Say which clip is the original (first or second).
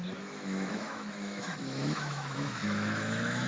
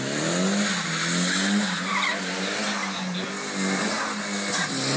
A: second